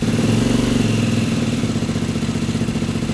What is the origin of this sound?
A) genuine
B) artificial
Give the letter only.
A